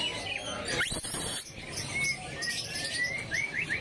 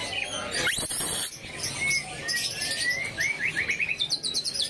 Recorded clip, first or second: second